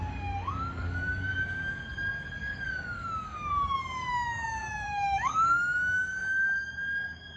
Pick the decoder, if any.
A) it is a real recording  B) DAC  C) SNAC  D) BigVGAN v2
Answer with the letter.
B